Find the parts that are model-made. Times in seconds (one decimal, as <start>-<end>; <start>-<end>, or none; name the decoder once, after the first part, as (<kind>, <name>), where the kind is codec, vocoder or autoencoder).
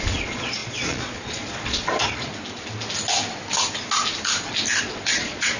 0.0-2.3 (vocoder, Vocos); 4.8-5.6